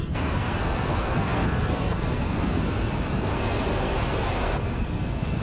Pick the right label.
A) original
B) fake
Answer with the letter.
B